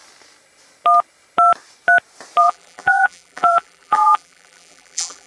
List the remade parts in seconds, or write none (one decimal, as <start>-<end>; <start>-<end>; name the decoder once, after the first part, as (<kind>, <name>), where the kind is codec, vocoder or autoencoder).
2.4-5.3 (vocoder, BigVGAN v2)